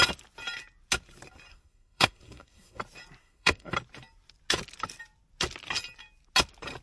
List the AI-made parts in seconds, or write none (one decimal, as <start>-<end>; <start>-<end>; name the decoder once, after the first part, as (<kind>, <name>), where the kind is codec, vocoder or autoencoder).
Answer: 1.5-2.8 (codec, SNAC); 3.2-3.7